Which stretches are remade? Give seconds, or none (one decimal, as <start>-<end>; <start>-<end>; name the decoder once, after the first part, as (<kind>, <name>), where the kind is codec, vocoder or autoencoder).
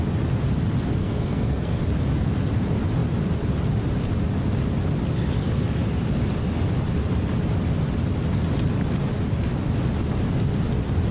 1.0-1.8 (codec, SNAC)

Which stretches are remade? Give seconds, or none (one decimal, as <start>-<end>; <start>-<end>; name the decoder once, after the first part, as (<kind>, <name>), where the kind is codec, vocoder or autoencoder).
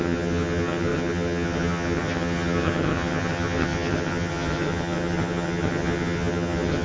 0.0-6.8 (vocoder, HiFi-GAN)